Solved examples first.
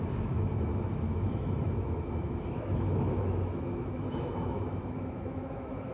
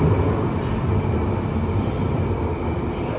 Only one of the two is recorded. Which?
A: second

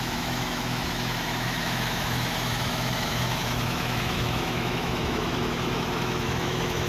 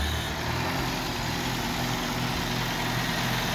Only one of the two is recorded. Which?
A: second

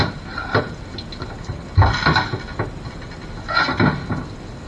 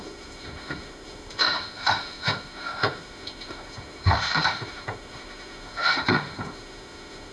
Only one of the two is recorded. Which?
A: first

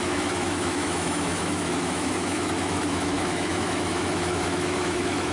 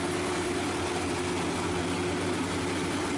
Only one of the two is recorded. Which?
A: second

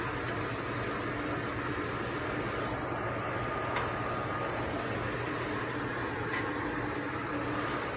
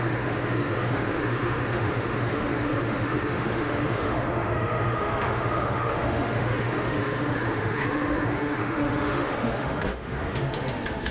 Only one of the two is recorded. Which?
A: first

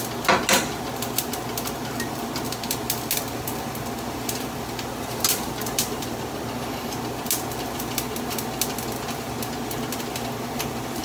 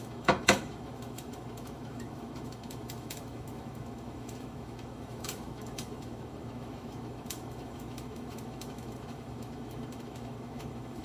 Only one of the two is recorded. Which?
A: first